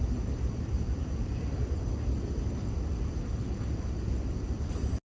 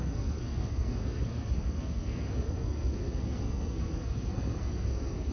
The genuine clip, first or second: first